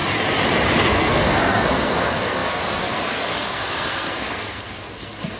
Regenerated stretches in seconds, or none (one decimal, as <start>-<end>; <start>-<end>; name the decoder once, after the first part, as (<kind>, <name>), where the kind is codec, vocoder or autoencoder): 0.8-5.4 (codec, SNAC)